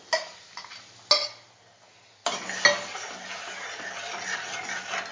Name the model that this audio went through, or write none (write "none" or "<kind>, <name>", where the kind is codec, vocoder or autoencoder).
none